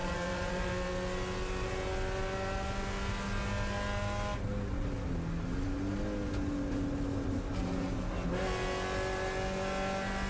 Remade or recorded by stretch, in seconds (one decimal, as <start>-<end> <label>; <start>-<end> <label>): 0.0-0.7 remade; 0.7-10.3 recorded

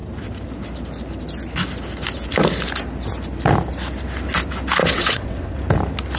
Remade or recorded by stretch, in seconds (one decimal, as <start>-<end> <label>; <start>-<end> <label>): 0.0-4.8 recorded; 4.8-5.6 remade; 5.6-6.2 recorded

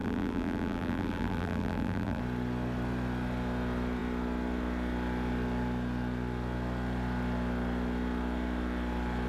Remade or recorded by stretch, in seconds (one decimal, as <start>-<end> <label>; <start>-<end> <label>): 0.0-2.2 remade; 2.2-9.3 recorded

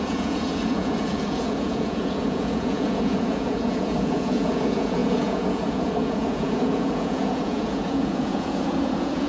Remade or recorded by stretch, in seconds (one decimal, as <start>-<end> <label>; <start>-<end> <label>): 0.0-9.3 remade